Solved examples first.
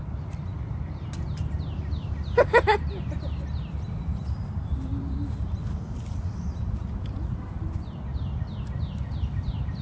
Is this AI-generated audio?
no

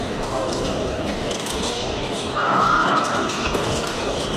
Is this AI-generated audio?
yes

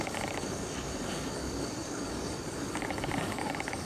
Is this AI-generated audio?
yes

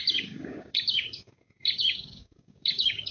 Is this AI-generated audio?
yes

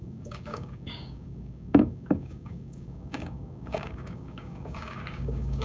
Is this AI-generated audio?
yes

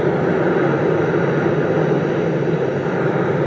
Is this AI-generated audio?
no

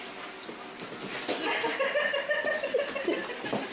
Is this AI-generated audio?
no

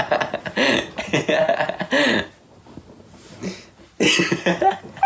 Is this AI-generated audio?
no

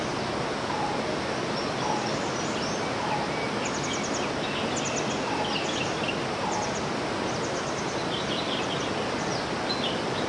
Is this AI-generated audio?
no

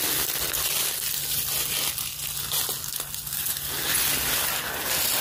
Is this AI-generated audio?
no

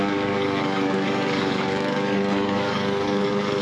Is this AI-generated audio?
yes